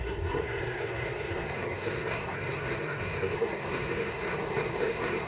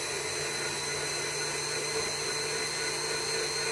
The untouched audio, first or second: second